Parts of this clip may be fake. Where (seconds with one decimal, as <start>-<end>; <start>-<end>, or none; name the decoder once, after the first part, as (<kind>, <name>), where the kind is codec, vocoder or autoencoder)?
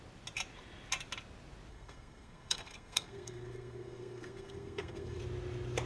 1.7-5.2 (codec, SNAC)